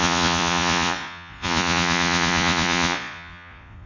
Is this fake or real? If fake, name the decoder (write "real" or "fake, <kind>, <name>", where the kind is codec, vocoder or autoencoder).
fake, vocoder, Vocos